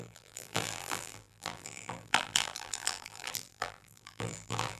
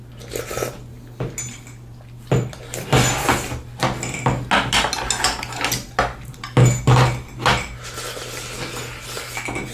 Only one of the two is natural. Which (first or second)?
second